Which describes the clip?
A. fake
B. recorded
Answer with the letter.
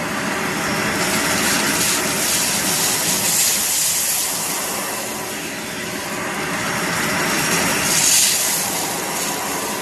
B